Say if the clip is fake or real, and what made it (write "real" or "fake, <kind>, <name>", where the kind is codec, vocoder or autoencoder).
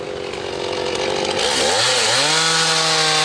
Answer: real